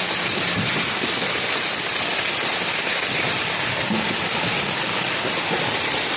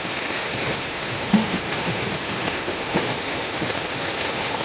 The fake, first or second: second